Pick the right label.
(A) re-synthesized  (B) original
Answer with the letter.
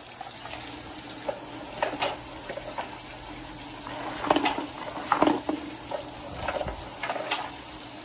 B